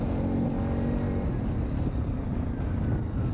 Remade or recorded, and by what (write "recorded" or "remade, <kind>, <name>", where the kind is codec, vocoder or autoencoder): recorded